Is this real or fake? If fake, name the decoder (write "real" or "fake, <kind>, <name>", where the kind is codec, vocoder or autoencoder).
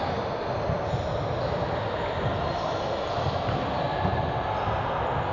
real